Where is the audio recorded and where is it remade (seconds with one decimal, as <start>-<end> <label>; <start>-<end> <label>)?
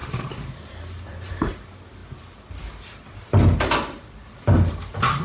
0.0-1.5 remade; 1.5-5.2 recorded